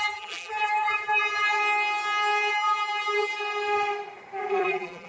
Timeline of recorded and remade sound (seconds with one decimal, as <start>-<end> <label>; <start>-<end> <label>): 0.0-1.6 remade; 1.6-2.5 recorded; 2.5-3.4 remade; 3.4-4.5 recorded; 4.5-5.1 remade